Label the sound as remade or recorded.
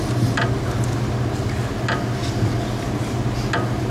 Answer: recorded